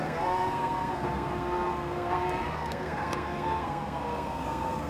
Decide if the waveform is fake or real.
fake